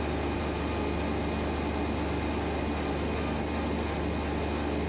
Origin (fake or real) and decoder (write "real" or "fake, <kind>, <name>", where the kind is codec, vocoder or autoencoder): real